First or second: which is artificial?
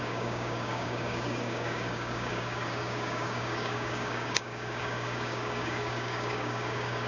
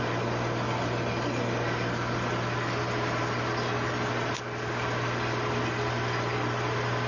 first